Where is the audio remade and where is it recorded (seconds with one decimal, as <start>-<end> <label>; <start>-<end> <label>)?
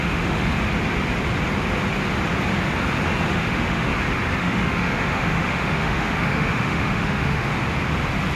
0.0-0.5 remade; 0.5-3.3 recorded; 3.3-3.9 remade; 3.9-4.4 recorded; 4.4-7.5 remade; 7.5-8.4 recorded